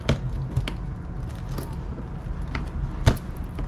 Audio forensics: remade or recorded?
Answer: recorded